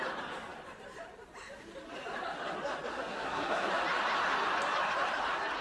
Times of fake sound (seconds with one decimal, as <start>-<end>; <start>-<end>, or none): 2.9-3.7